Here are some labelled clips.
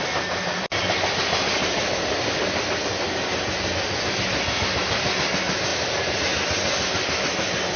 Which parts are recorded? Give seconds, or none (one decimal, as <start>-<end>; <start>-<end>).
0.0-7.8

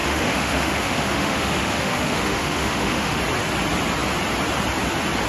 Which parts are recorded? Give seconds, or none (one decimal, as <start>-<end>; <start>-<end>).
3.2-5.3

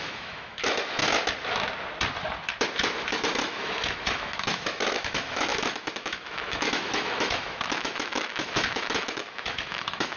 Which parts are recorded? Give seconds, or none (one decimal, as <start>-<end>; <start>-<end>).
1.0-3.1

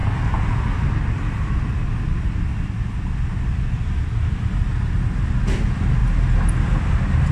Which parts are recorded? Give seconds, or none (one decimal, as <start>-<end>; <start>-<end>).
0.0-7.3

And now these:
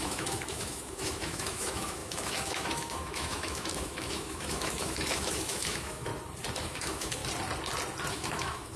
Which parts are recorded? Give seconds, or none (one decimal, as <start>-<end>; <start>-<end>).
6.1-6.6; 7.2-8.1

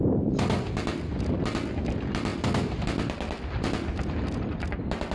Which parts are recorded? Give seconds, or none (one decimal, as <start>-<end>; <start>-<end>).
0.0-5.1